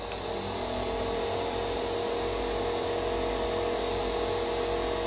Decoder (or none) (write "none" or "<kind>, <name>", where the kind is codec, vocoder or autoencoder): none